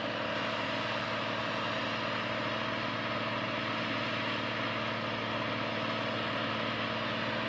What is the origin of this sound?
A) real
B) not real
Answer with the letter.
A